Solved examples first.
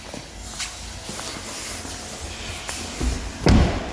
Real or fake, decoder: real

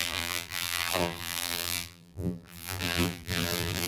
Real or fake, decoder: fake, vocoder, BigVGAN v2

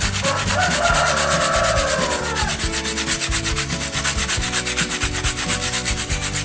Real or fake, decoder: real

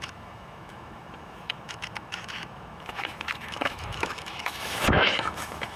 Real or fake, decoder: fake, autoencoder, DAC-VAE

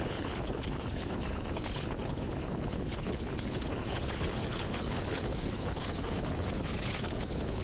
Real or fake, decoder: fake, codec, HILCodec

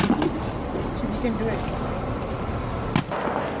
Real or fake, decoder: real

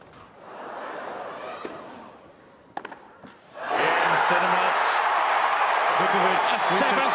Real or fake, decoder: real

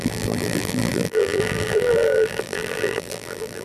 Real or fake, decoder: fake, vocoder, BigVGAN v2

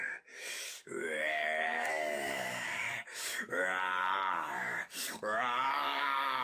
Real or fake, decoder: fake, codec, DAC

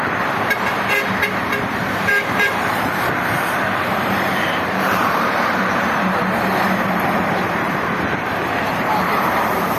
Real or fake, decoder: fake, vocoder, BigVGAN v2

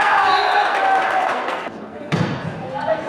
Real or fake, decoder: fake, codec, SNAC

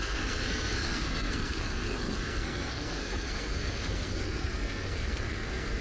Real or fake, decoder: fake, codec, SNAC